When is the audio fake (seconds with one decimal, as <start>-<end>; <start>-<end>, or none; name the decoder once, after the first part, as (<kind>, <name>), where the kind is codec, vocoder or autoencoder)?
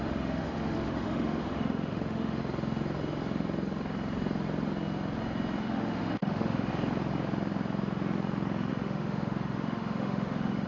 0.0-2.4 (autoencoder, DAC-VAE); 5.6-6.7; 8.7-10.7